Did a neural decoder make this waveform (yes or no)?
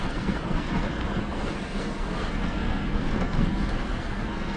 yes